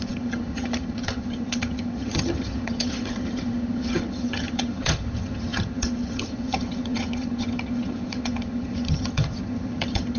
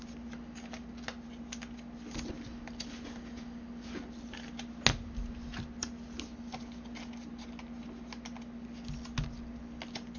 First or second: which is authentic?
second